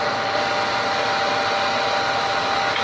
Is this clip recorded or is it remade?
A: recorded